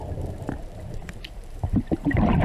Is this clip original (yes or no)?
no